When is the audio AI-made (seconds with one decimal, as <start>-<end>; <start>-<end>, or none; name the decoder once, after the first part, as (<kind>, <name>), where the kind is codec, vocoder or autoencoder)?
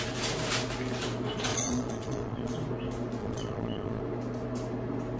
1.5-2.5 (vocoder, Vocos); 3.2-4.0